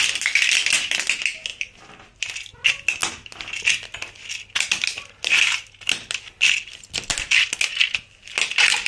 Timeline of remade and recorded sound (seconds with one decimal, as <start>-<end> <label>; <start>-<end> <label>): 0.0-8.9 recorded